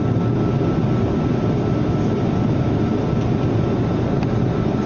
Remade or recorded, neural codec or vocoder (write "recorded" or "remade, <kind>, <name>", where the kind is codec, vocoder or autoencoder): recorded